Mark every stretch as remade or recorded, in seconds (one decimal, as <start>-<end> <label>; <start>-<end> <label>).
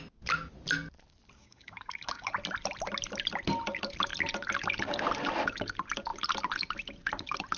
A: 0.0-1.4 recorded; 1.4-2.3 remade; 2.3-7.6 recorded